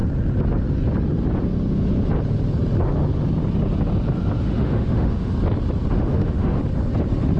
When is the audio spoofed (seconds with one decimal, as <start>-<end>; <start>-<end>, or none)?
4.4-5.3; 5.9-6.6